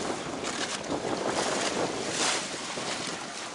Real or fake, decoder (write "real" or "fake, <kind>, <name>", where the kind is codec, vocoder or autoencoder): real